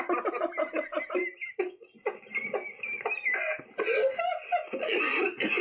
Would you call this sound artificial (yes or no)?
no